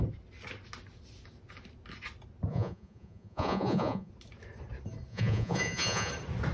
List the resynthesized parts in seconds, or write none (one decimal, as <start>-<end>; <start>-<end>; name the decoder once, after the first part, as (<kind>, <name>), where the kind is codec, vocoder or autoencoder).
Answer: 2.5-4.1 (vocoder, Vocos); 5.1-6.1